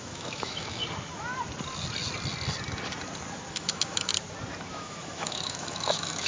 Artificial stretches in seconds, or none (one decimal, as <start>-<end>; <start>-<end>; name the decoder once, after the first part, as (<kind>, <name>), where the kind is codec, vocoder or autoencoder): 0.0-0.8 (autoencoder, DAC-VAE); 3.5-4.1; 4.7-6.3

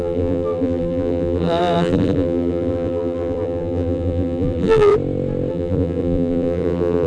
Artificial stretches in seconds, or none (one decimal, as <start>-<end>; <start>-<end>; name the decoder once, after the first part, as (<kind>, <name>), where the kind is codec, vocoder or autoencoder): 0.0-4.9 (vocoder, BigVGAN v2); 5.5-7.1

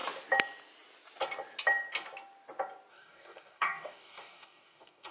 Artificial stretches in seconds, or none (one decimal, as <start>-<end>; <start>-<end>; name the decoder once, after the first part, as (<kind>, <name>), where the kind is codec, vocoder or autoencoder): 2.9-5.1 (codec, DAC)

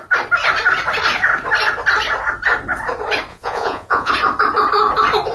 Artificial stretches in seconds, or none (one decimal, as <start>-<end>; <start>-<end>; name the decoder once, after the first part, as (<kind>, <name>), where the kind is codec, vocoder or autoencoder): 3.3-4.1 (vocoder, Vocos)

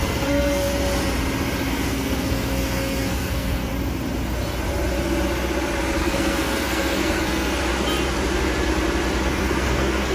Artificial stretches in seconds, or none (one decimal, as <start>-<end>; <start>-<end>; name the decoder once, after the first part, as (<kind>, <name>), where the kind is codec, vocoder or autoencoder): 0.0-0.7 (codec, SNAC); 1.7-3.7; 6.0-7.7; 9.3-10.1

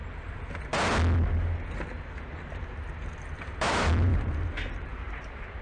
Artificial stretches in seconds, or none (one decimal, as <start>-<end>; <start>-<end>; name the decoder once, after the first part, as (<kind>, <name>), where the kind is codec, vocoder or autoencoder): 3.4-5.6 (vocoder, BigVGAN v2)